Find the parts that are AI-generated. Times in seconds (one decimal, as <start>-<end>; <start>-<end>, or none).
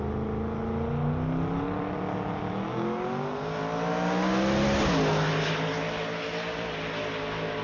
2.7-3.6